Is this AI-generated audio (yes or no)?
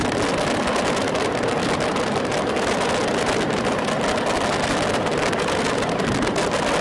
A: no